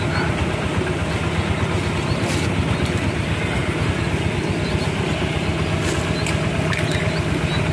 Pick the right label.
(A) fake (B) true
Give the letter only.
B